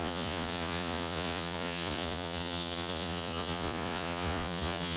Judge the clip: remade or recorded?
remade